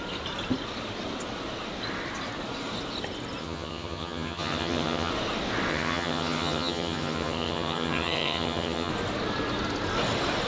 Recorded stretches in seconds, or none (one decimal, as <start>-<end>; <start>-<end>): 0.0-3.4; 5.1-5.7; 8.9-10.5